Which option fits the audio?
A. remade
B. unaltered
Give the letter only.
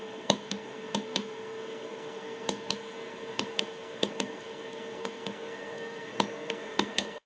A